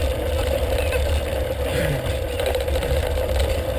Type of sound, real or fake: real